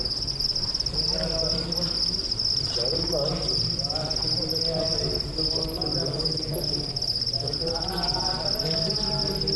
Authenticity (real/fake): real